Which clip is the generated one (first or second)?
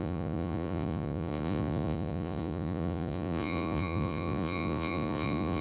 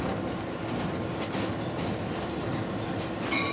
first